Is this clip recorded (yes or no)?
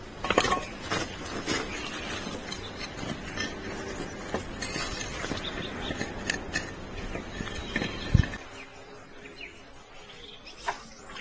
yes